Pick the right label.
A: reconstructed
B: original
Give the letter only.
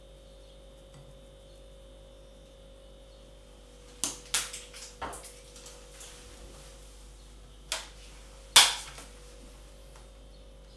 B